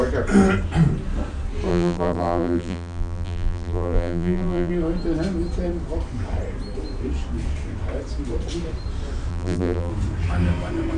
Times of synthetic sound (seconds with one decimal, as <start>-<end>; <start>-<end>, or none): 1.7-4.7; 9.3-9.9

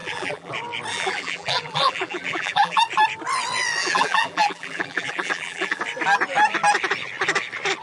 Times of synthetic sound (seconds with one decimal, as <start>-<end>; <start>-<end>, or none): 0.0-0.5; 0.9-2.8; 3.8-5.8

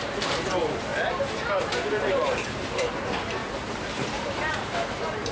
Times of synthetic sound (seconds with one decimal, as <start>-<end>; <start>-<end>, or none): 0.0-0.9; 1.8-5.3

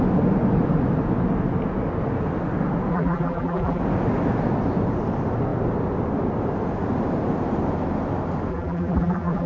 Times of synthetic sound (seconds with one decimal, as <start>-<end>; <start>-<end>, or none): 2.9-3.8; 8.5-9.5